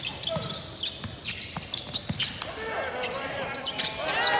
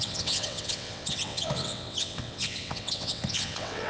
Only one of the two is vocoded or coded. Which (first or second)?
second